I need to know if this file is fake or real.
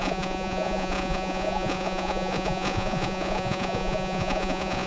fake